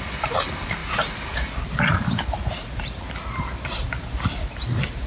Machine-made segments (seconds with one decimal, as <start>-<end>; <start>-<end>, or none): none

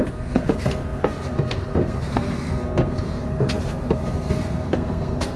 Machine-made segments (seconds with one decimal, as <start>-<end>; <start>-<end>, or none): 0.0-5.4

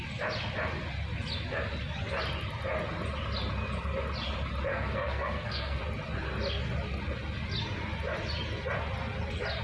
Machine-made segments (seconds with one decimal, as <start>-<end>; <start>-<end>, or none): 4.7-5.8

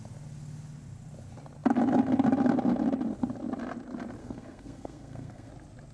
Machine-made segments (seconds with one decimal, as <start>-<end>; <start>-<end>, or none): 4.2-5.5

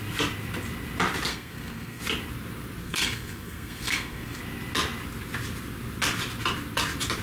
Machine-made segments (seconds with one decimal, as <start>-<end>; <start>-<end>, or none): 1.3-2.0; 2.8-4.4

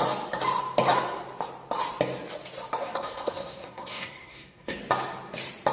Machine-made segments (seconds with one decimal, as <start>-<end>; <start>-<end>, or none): 2.8-4.8

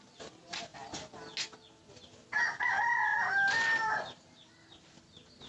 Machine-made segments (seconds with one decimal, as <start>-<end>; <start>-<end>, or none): none

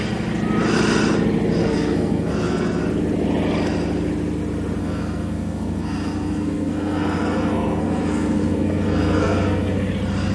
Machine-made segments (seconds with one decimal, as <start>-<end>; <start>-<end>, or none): 1.6-2.8; 4.8-9.9